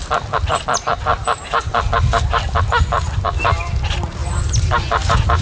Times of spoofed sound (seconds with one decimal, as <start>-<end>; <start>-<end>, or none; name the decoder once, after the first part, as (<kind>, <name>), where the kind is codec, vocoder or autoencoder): none